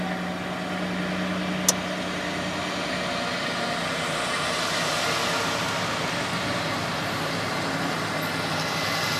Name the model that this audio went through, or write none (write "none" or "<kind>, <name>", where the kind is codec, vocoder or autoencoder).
none